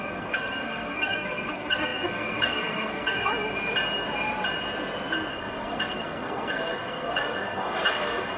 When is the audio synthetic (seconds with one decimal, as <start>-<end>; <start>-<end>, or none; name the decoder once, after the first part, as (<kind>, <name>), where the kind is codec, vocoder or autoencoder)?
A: 0.0-3.3 (codec, SNAC); 5.3-8.4